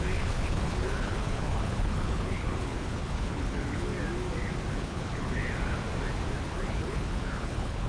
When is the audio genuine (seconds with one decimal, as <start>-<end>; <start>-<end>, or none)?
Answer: 3.9-4.7; 5.4-6.4